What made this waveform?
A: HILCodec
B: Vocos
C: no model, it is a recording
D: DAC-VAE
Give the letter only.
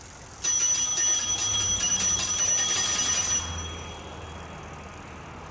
C